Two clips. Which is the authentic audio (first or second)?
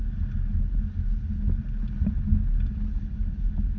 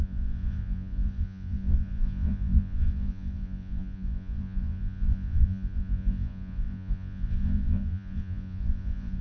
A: first